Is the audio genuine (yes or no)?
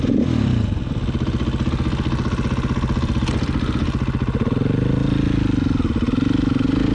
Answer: yes